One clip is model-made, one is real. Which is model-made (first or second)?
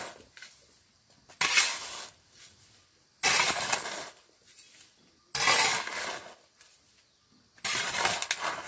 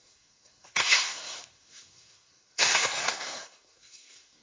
second